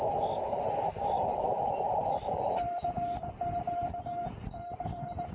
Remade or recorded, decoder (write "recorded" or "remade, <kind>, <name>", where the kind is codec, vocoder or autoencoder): recorded